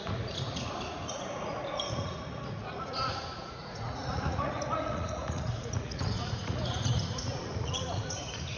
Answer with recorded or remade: remade